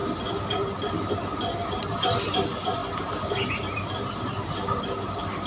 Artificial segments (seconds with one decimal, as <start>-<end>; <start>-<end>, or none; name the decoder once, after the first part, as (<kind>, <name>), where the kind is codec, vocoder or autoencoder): none